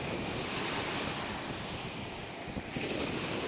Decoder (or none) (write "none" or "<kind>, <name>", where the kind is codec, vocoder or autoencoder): none